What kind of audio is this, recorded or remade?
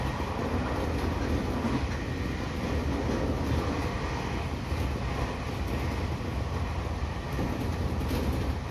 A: recorded